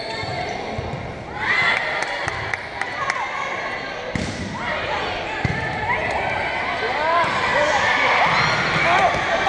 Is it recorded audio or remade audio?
recorded